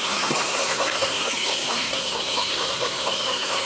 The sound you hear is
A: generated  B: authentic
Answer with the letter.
A